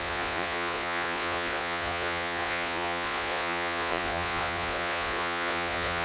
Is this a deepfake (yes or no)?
yes